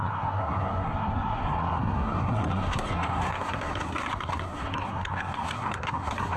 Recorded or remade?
remade